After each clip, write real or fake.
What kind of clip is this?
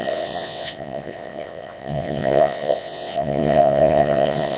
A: fake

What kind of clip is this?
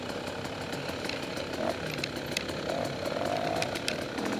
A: real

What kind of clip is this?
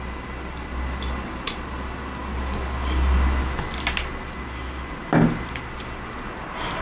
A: real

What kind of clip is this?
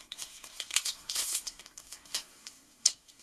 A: fake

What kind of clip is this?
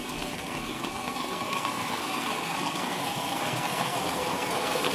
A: fake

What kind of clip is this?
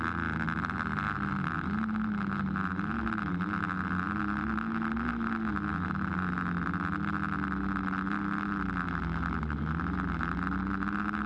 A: real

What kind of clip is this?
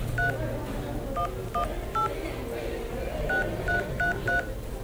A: real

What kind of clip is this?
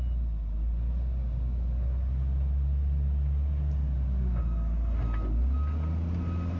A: real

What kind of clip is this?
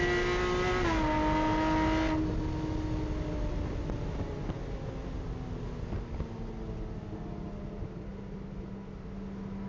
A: real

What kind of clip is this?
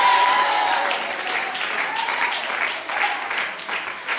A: fake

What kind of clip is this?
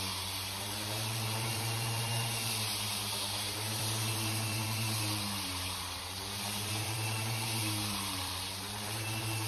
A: fake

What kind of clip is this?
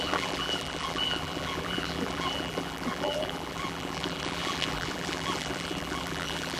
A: fake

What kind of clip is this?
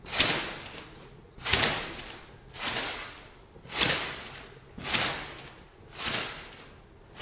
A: real